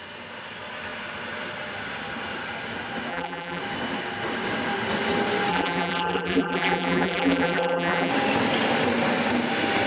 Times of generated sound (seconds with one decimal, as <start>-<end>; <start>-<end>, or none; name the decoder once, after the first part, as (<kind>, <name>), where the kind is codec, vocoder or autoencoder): 3.1-3.6 (vocoder, BigVGAN v2); 5.5-8.1

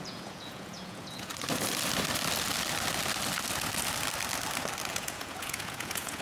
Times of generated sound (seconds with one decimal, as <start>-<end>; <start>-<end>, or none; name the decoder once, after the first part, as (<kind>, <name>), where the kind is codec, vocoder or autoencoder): 0.0-1.3 (vocoder, Vocos); 4.9-6.2

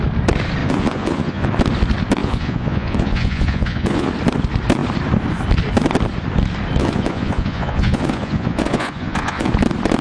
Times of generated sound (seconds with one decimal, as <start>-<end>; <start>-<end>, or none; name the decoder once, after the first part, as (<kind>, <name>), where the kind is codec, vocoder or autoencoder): 0.6-1.5 (vocoder, Vocos); 2.2-4.1; 6.8-9.5

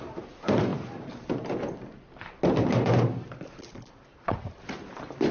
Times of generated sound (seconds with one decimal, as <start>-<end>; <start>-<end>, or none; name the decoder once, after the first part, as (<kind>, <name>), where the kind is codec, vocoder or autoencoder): 0.0-0.7 (vocoder, BigVGAN v2); 2.8-5.3

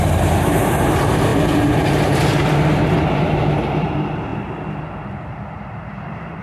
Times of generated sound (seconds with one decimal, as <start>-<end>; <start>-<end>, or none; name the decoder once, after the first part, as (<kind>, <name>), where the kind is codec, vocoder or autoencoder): 0.0-6.4 (vocoder, BigVGAN v2)

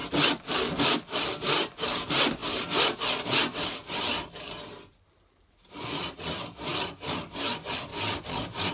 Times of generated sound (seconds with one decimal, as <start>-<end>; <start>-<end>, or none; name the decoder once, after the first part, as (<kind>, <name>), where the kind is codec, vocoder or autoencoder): none